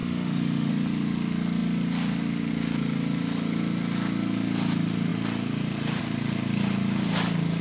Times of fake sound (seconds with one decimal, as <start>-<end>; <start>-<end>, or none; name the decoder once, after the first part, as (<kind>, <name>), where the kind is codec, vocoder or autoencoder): 0.0-0.7 (autoencoder, DAC-VAE)